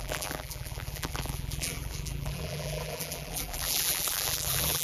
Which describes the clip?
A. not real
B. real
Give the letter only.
A